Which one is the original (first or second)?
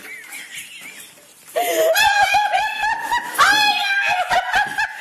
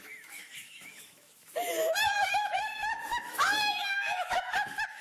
first